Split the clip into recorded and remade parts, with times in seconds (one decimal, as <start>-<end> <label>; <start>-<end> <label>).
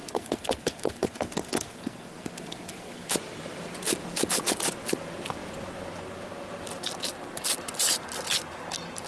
0.0-3.1 remade; 3.1-9.1 recorded